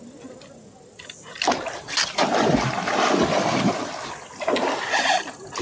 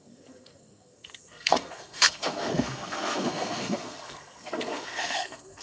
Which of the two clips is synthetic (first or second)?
second